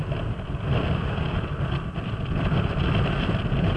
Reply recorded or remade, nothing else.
recorded